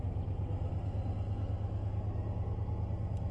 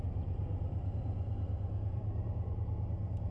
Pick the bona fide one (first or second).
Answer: first